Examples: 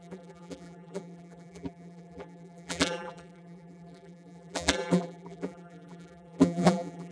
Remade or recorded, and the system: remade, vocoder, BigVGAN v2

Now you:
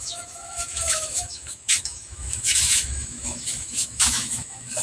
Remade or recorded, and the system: remade, autoencoder, DAC-VAE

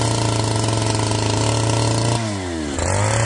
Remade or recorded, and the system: recorded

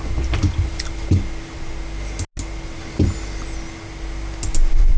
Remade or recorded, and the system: recorded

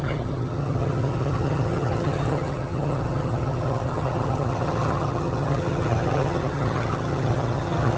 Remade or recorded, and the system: remade, vocoder, HiFi-GAN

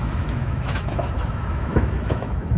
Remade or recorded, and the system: remade, autoencoder, DAC-VAE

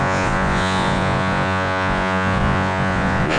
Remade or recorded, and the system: remade, vocoder, Vocos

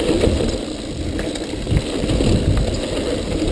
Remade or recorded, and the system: recorded